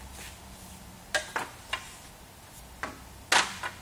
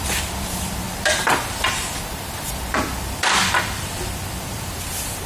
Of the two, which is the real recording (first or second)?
first